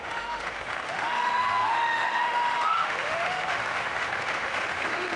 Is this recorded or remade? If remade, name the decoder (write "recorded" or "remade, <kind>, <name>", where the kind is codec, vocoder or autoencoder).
remade, autoencoder, DAC-VAE